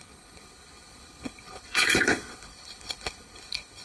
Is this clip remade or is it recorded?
remade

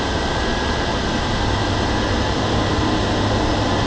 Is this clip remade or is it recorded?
recorded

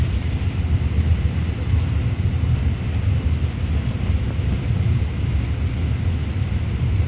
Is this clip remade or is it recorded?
recorded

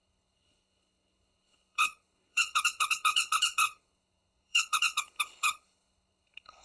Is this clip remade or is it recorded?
remade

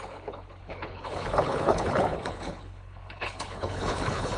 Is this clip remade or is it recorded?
remade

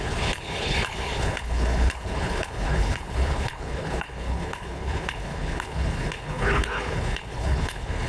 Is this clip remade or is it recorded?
remade